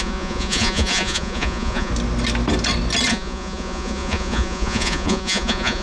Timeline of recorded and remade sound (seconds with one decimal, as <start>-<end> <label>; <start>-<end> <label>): 0.0-1.9 remade; 1.9-3.1 recorded; 3.1-5.8 remade